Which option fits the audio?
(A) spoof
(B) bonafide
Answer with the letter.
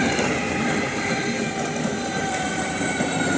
A